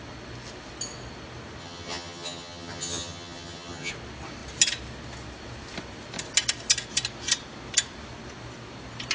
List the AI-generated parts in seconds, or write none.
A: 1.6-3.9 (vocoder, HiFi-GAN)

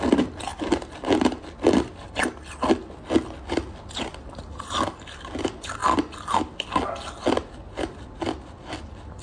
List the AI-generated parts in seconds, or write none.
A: none